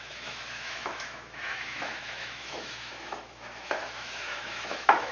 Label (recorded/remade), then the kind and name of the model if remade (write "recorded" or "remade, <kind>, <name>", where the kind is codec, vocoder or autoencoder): remade, autoencoder, DAC-VAE